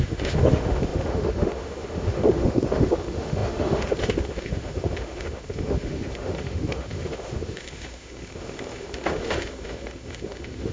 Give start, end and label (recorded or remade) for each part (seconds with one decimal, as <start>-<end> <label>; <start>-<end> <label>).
0.0-10.7 remade